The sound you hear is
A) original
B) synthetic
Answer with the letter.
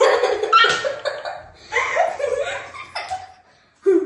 A